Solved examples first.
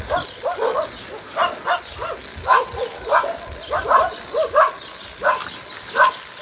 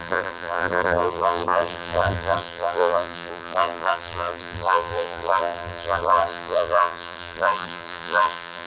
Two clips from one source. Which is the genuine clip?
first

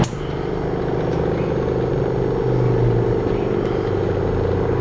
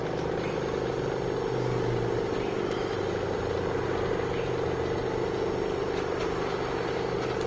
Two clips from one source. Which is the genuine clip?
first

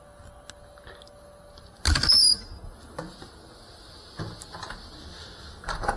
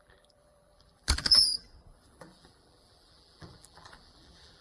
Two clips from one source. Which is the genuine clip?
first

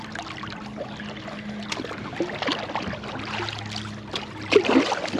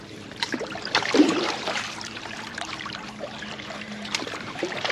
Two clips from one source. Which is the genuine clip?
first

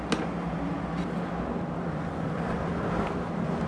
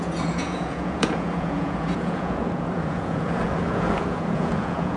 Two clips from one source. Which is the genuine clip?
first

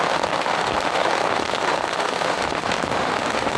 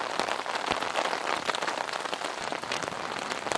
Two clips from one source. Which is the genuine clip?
second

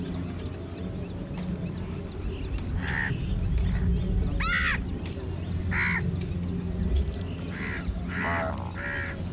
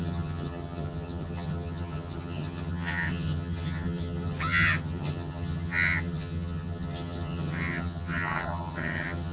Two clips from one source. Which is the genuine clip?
first